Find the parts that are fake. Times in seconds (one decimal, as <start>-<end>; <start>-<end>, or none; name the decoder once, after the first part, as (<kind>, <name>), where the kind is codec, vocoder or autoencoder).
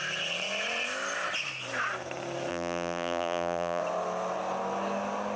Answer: 2.5-3.8 (vocoder, BigVGAN v2)